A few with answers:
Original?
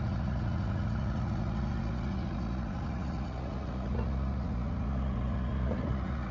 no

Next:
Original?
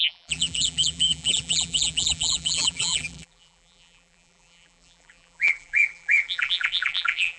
no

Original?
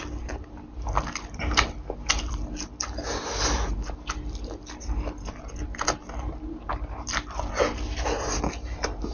yes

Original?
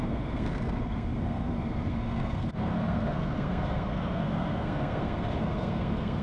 no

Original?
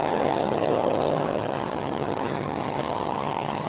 no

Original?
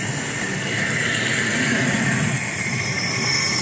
yes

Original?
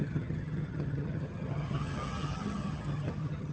no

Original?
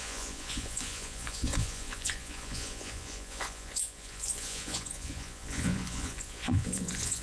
no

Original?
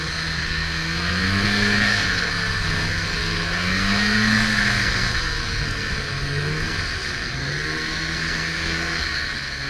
no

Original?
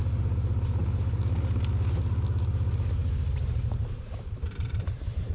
yes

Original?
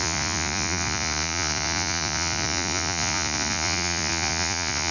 no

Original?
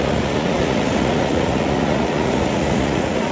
no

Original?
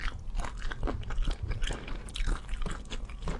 yes